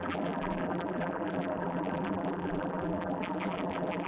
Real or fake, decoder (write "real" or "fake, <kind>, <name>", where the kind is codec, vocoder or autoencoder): fake, vocoder, BigVGAN v2